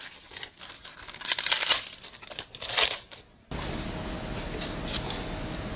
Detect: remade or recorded recorded